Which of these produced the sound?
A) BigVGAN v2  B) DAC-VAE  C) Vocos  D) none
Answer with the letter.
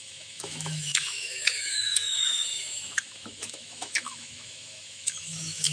B